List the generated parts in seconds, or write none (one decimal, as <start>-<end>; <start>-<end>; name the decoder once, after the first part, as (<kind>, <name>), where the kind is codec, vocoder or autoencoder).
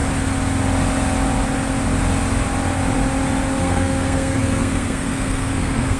3.6-6.0 (codec, SNAC)